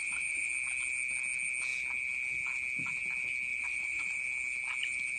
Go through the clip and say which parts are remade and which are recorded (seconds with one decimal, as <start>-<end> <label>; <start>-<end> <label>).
0.0-0.5 remade; 0.5-3.5 recorded; 3.5-4.2 remade; 4.2-5.2 recorded